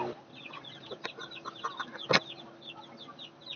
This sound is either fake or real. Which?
real